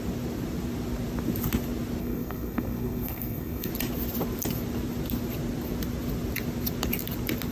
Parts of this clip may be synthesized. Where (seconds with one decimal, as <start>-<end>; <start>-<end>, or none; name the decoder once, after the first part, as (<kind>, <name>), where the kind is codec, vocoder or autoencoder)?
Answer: 2.0-3.7 (codec, SNAC)